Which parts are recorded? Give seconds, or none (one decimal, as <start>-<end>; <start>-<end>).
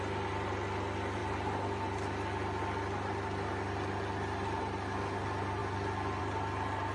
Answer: 0.0-6.9